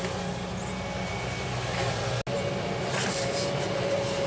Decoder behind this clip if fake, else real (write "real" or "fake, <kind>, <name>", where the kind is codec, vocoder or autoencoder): real